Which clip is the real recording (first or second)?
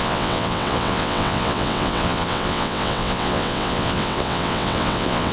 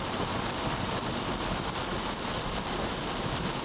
second